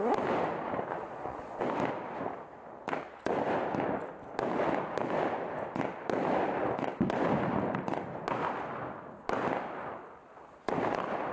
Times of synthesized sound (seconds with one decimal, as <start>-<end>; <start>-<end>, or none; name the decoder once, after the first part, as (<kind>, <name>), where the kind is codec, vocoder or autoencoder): 0.9-1.6 (vocoder, Vocos)

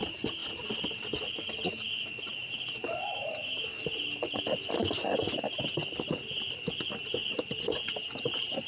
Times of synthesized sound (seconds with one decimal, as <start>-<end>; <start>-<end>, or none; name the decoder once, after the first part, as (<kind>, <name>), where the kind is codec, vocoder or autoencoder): none

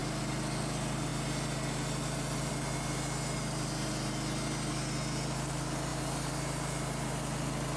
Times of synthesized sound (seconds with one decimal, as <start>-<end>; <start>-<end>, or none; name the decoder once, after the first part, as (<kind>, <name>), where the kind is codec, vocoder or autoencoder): none

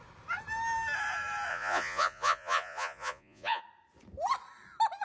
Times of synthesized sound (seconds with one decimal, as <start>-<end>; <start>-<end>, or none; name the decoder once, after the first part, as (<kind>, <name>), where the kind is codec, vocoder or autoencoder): 1.5-3.6 (vocoder, Vocos)

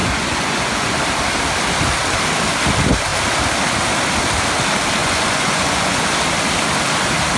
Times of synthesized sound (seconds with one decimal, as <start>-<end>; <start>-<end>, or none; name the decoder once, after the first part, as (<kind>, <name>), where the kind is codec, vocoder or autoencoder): 0.0-1.0 (vocoder, Vocos); 5.0-6.0